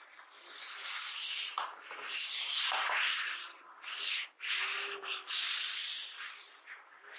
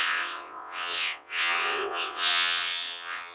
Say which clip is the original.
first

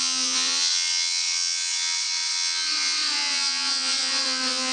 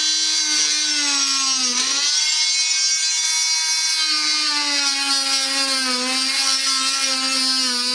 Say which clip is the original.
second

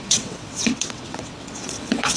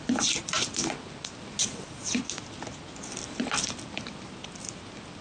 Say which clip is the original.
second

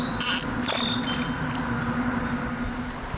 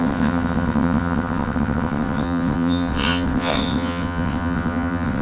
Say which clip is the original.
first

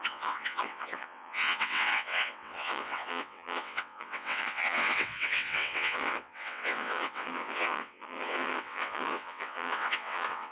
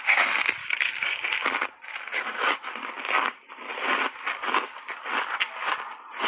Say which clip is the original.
second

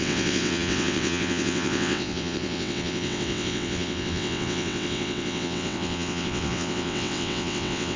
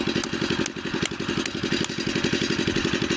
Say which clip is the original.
second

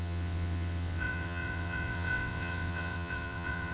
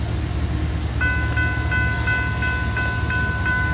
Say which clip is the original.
second